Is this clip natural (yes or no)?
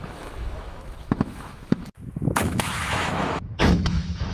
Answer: no